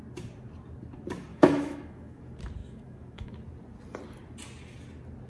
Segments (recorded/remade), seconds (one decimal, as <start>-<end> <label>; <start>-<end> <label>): 0.0-1.3 recorded; 1.3-2.2 remade; 2.2-2.6 recorded; 2.6-3.3 remade; 3.3-5.3 recorded

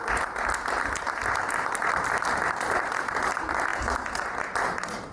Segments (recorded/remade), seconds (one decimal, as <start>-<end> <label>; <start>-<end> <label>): 0.0-5.1 recorded